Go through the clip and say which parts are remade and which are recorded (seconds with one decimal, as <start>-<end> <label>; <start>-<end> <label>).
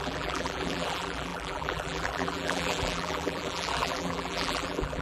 0.0-5.0 remade